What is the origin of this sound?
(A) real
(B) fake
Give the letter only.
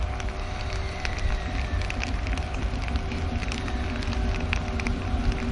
A